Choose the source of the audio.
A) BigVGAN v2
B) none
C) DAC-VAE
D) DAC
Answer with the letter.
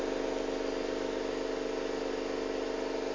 B